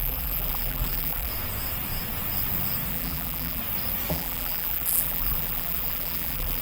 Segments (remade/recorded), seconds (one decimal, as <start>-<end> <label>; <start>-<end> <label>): 0.0-1.3 remade; 1.3-2.9 recorded; 2.9-3.6 remade; 3.6-4.1 recorded; 4.1-6.6 remade